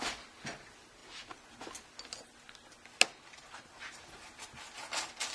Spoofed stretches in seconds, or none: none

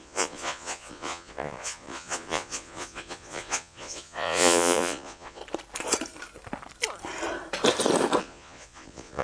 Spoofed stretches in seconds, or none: 0.0-5.4; 8.2-9.2

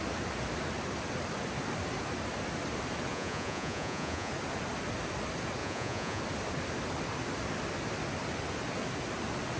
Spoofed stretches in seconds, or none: 3.1-4.3; 5.6-6.2

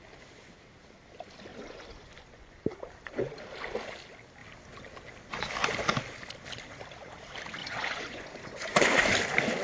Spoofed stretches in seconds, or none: 1.5-2.6; 7.6-8.8

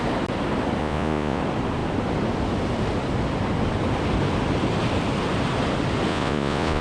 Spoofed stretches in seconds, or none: 0.8-1.4; 6.1-6.8

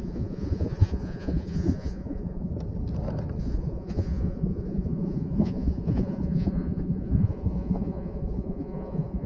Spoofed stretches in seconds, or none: 0.0-2.5; 3.4-9.3

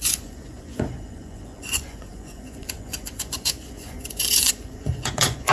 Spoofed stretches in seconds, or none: 0.0-5.5

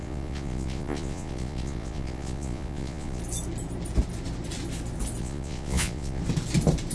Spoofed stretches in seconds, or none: 0.0-3.2; 5.2-6.2